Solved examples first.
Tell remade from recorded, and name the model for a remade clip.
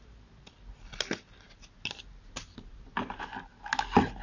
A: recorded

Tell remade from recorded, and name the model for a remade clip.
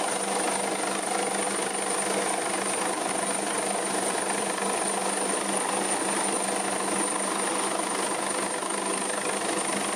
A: recorded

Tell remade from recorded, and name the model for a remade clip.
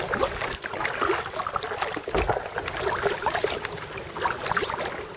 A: recorded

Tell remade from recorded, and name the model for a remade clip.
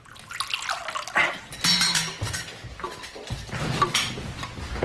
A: recorded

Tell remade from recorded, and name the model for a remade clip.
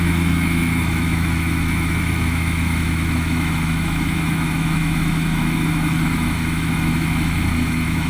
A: remade, autoencoder, DAC-VAE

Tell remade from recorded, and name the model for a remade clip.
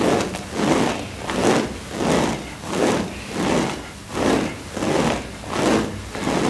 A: recorded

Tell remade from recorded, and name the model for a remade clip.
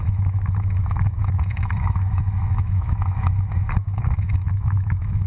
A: remade, autoencoder, DAC-VAE